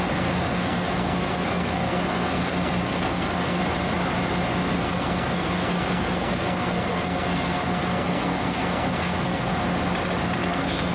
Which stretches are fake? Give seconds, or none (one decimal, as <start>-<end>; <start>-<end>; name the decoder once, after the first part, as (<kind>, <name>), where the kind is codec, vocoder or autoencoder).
0.0-3.6 (codec, SNAC); 4.7-9.5; 10.2-10.9

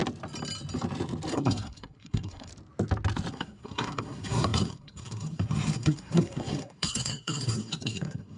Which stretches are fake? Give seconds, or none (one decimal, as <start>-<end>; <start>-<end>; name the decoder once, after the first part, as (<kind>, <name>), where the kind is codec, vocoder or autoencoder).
1.3-2.5 (codec, SNAC); 3.3-8.4